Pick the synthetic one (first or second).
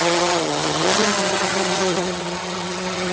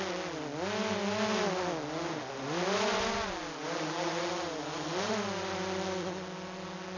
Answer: first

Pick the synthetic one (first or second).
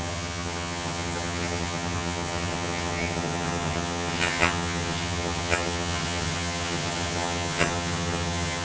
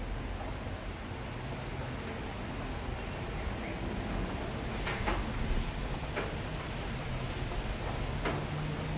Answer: first